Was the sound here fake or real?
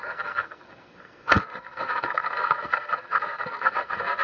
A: fake